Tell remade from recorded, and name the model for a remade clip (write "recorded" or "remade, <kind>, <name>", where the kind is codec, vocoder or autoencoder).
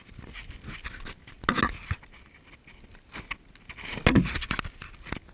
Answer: recorded